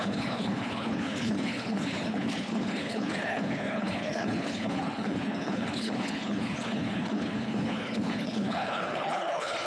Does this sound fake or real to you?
fake